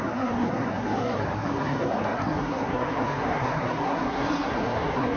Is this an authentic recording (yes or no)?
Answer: no